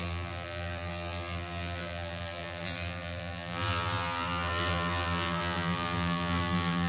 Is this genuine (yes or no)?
no